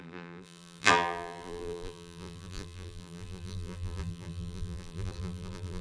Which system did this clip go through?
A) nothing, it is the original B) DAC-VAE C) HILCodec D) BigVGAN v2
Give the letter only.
D